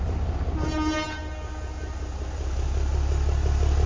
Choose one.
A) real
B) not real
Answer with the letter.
A